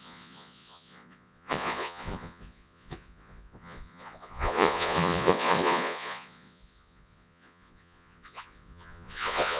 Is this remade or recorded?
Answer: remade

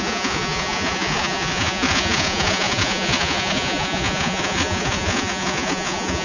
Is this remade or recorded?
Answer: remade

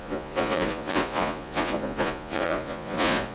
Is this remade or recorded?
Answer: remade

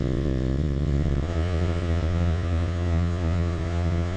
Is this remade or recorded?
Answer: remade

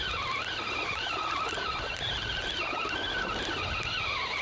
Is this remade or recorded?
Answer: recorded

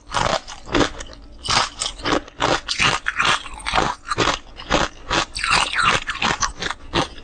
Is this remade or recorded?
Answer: recorded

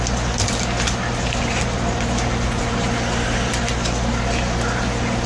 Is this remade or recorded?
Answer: recorded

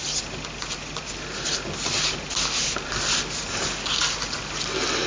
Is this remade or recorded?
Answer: recorded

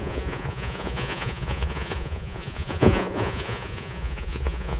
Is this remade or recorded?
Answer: remade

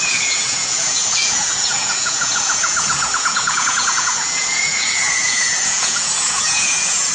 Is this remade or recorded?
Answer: remade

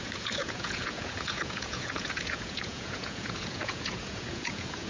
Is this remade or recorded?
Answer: remade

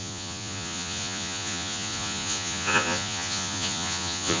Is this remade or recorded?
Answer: remade